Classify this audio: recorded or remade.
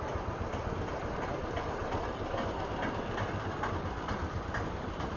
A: recorded